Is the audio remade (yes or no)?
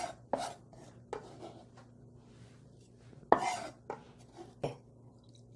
no